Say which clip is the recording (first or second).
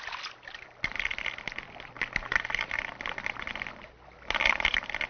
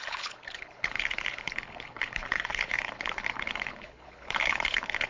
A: first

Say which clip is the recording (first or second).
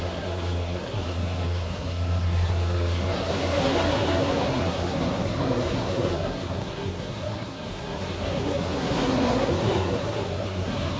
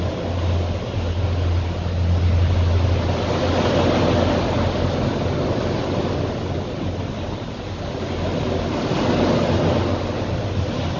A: second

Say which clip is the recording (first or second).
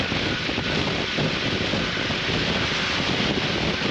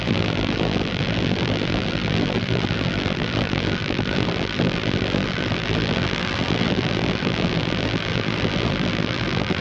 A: first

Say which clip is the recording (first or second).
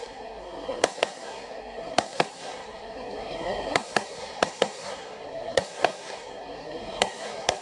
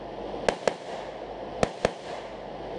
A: second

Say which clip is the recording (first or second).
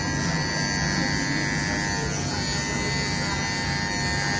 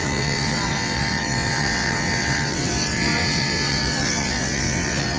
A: first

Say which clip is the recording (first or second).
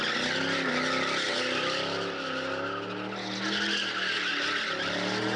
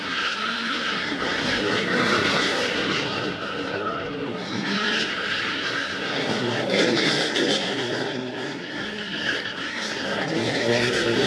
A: first